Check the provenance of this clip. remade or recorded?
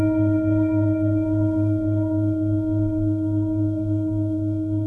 remade